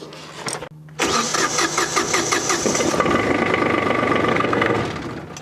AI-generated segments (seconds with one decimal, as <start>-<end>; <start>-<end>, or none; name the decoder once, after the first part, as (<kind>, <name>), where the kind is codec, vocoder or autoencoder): 4.3-4.8 (codec, SNAC)